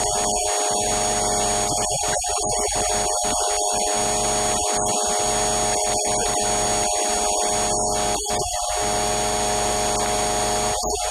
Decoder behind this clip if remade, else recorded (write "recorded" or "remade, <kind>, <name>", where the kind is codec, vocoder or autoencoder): recorded